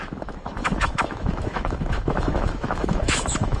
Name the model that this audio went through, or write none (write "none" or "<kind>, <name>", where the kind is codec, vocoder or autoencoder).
autoencoder, DAC-VAE